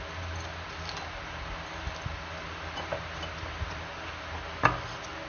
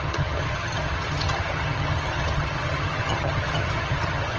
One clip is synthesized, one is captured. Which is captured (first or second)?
first